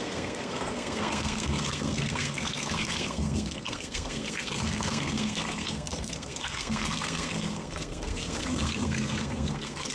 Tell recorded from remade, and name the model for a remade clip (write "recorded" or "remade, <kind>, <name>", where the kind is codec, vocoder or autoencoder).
remade, codec, SNAC